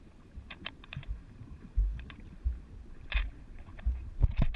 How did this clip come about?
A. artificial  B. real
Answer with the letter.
A